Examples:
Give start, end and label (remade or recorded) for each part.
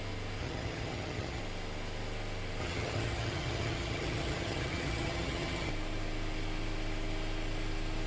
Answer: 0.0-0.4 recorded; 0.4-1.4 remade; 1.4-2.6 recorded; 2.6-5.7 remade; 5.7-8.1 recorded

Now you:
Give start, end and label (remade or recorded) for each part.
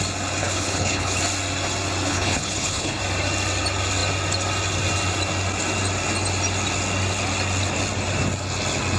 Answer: 0.0-0.4 recorded; 0.4-1.2 remade; 1.2-2.1 recorded; 2.1-3.0 remade; 3.0-9.0 recorded